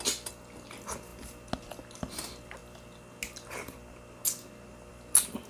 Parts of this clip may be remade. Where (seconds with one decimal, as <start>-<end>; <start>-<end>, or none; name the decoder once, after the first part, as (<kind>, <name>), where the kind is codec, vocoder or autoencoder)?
none